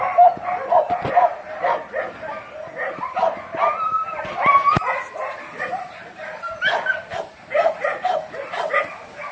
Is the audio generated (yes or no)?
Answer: no